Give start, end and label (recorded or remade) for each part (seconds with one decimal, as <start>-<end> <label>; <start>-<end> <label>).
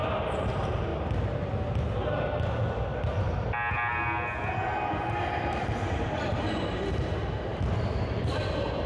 0.0-0.9 remade; 0.9-5.2 recorded; 5.2-8.9 remade